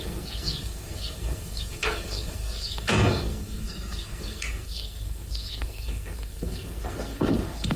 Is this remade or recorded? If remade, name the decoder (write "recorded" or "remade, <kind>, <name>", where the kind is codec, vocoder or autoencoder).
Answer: remade, codec, SNAC